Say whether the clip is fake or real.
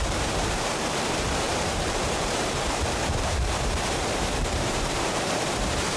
fake